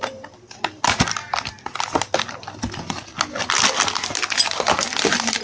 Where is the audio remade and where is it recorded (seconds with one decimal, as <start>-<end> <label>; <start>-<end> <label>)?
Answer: 0.0-5.4 recorded